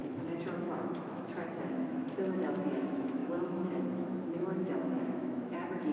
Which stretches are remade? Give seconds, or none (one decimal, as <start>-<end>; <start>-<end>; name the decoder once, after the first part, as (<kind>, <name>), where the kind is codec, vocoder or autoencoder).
0.0-5.9 (autoencoder, DAC-VAE)